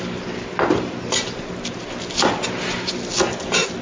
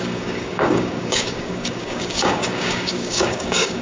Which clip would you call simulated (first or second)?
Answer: second